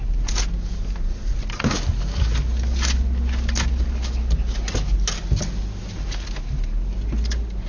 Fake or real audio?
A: real